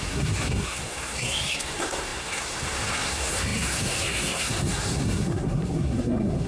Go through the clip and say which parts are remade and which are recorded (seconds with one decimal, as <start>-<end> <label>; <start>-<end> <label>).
0.0-6.5 remade